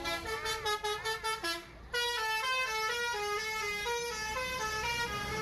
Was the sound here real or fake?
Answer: real